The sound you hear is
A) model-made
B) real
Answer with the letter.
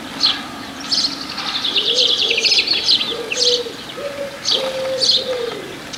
B